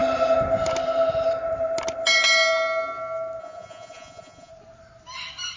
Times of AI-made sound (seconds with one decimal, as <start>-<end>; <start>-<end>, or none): 3.4-4.5